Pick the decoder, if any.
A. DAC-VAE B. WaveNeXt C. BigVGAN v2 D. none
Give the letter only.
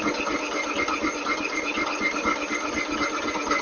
D